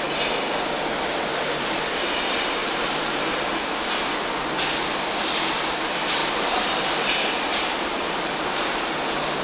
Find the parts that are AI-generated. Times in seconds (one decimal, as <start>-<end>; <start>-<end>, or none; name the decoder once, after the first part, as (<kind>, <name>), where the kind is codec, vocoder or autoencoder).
1.3-1.8 (vocoder, BigVGAN v2); 2.6-3.3; 6.2-7.1; 7.5-8.3